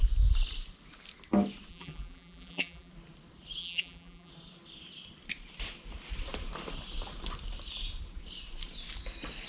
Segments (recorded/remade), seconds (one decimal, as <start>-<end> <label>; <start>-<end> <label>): 0.0-1.7 recorded; 1.7-2.9 remade; 2.9-3.6 recorded; 3.6-4.3 remade; 4.3-9.5 recorded